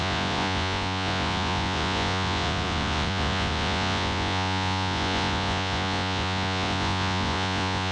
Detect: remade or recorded remade